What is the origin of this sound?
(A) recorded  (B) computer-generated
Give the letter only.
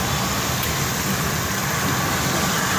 A